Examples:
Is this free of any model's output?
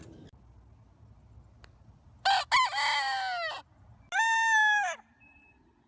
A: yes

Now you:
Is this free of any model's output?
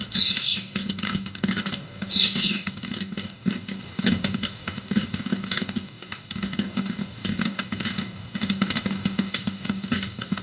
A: no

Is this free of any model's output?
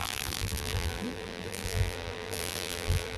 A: no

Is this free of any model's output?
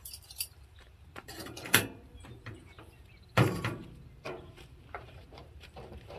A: no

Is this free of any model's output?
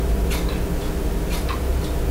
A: yes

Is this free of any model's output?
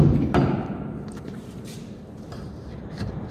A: no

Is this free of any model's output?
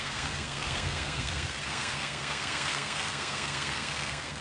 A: no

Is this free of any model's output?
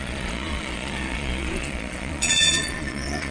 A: no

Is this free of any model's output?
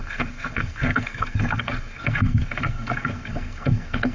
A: no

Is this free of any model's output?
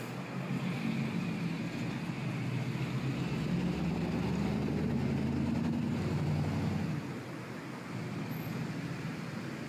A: yes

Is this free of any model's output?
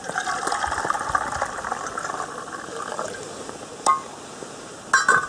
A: yes